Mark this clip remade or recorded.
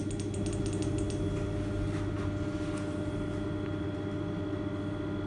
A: recorded